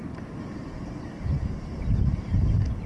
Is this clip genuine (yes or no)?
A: yes